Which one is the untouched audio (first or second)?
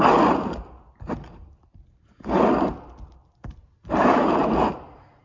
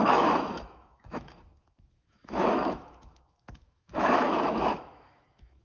first